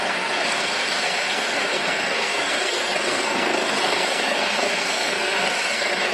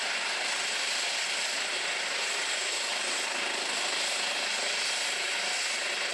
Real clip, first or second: second